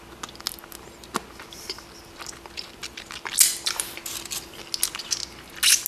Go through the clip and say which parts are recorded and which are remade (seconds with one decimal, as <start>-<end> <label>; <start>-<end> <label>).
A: 0.0-5.9 recorded